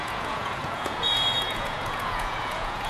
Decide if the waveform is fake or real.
fake